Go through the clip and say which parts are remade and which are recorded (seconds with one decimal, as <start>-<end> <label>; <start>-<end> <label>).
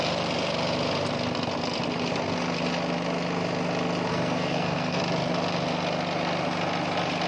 0.0-4.1 recorded; 4.1-5.0 remade; 5.0-7.3 recorded